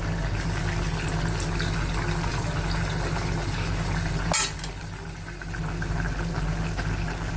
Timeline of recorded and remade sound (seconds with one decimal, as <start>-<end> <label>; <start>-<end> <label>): 0.0-7.4 recorded